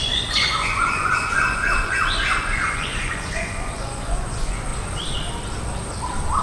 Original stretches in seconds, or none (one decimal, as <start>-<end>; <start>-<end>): 4.7-6.4